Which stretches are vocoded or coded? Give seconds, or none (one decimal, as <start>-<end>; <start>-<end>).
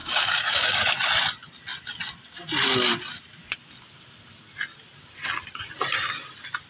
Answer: 0.0-0.8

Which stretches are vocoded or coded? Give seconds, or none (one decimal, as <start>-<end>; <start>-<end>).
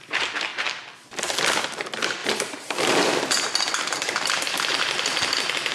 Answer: 0.0-0.5; 1.6-5.7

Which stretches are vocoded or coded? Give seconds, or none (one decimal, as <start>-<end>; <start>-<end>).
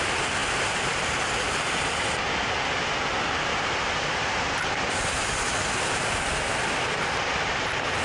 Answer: 3.5-5.5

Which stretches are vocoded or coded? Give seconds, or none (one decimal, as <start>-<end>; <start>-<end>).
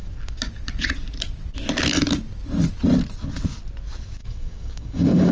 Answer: 4.2-5.3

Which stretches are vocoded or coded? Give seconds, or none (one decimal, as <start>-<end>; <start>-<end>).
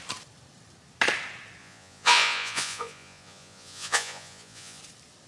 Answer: 1.6-4.8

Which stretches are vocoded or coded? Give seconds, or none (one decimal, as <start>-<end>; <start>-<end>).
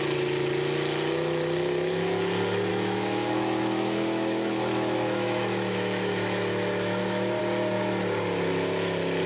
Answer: 2.7-7.4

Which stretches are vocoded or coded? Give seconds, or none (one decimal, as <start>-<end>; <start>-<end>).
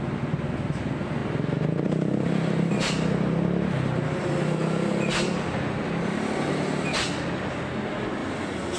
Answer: none